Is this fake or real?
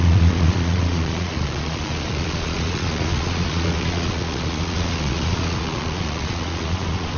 fake